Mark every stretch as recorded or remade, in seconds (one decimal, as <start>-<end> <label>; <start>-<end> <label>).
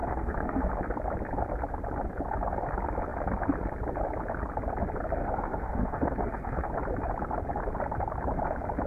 0.0-0.7 remade; 0.7-5.2 recorded; 5.2-6.7 remade; 6.7-8.9 recorded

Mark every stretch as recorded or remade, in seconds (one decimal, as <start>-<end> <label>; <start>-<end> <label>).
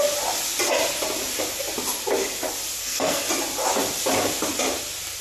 0.0-2.8 recorded; 2.8-3.3 remade; 3.3-5.2 recorded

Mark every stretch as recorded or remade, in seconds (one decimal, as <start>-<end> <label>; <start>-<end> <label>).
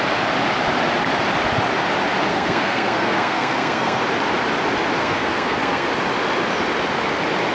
0.0-2.3 recorded; 2.3-4.0 remade; 4.0-5.0 recorded; 5.0-5.9 remade; 5.9-7.5 recorded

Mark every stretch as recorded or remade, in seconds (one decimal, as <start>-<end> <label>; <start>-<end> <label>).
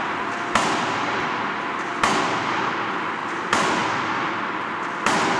0.0-1.9 remade; 1.9-2.6 recorded; 2.6-3.8 remade; 3.8-5.0 recorded; 5.0-5.4 remade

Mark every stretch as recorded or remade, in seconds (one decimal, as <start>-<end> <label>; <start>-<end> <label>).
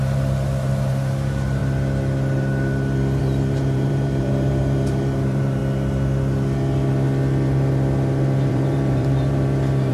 0.0-1.6 remade; 1.6-3.2 recorded; 3.2-5.6 remade; 5.6-8.5 recorded; 8.5-9.9 remade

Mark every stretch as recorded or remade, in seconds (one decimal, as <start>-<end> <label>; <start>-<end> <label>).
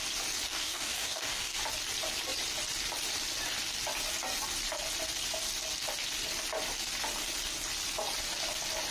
0.0-0.5 recorded; 0.5-1.6 remade; 1.6-8.9 recorded